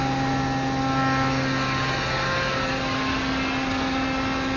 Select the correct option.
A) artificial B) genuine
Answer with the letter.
B